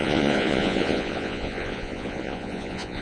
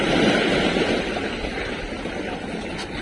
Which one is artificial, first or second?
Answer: first